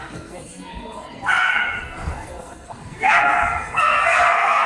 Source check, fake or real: fake